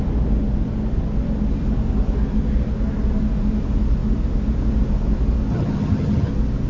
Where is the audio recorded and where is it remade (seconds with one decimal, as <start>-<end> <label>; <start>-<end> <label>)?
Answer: 0.0-5.5 recorded; 5.5-6.3 remade; 6.3-6.7 recorded